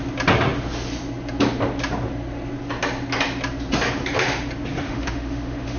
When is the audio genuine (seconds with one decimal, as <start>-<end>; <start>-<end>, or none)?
0.0-4.8